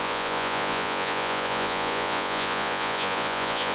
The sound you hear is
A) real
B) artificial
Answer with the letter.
B